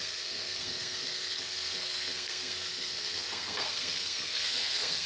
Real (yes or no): no